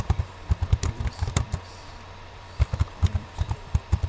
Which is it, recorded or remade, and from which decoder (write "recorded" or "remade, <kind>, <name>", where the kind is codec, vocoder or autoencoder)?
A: remade, vocoder, BigVGAN v2